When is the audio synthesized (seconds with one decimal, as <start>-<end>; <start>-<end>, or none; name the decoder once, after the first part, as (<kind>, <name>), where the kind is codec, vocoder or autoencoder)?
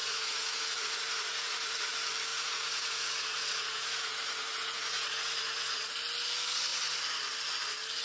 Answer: 0.0-1.9 (vocoder, Vocos); 2.3-5.9